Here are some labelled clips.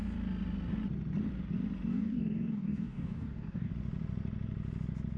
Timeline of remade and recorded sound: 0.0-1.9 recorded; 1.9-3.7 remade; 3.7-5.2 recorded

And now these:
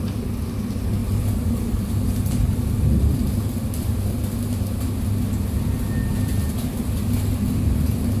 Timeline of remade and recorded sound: 0.0-8.2 recorded